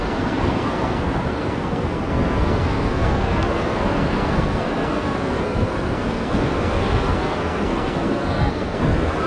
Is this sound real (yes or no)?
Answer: no